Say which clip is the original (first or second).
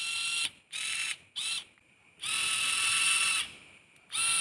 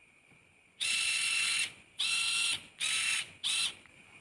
first